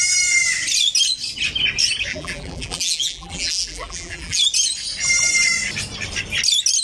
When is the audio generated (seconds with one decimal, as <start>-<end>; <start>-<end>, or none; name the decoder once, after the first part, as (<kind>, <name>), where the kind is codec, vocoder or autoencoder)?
2.1-4.4 (vocoder, BigVGAN v2)